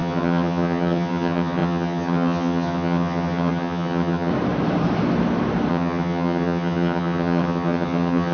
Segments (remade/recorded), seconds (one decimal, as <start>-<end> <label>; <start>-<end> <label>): 0.0-4.3 remade; 4.3-5.7 recorded; 5.7-8.3 remade